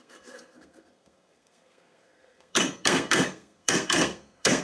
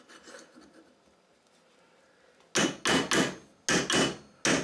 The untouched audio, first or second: second